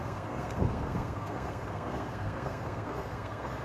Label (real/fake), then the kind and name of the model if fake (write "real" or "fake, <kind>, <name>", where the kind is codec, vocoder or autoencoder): fake, codec, SNAC